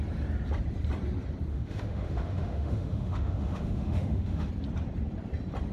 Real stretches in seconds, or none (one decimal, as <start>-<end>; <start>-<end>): 0.0-1.5; 4.5-5.7